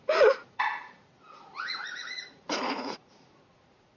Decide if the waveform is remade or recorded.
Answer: remade